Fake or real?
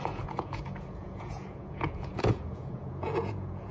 fake